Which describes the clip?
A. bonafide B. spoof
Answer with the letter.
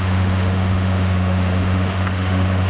B